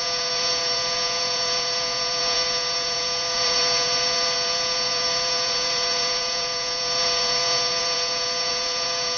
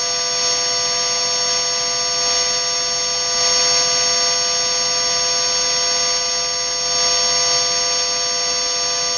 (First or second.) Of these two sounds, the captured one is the second